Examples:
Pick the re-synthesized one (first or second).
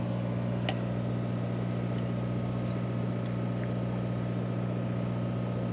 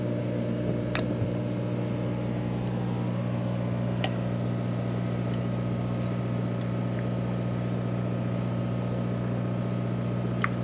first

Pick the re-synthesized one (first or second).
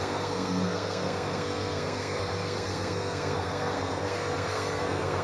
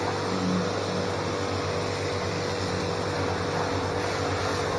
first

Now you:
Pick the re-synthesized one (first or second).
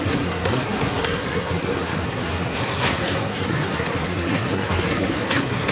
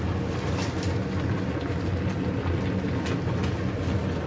first